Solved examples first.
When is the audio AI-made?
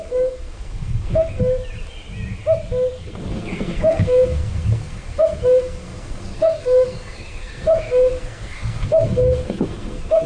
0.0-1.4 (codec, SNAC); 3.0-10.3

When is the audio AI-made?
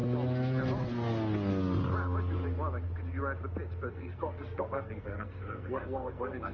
3.9-6.5 (codec, SNAC)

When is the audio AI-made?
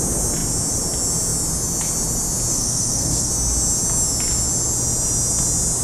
2.5-3.3 (codec, SNAC)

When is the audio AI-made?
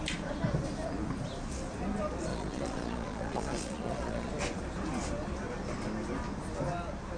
2.3-4.3 (vocoder, Vocos)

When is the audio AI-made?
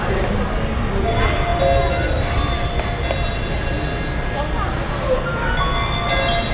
none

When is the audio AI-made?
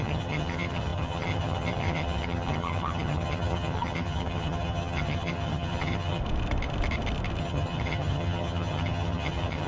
0.0-6.2 (vocoder, HiFi-GAN); 7.4-9.7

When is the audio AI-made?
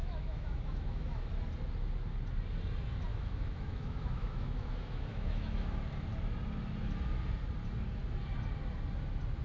0.0-1.3 (autoencoder, DAC-VAE); 3.1-5.8